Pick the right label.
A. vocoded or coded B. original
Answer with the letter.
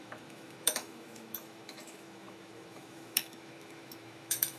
A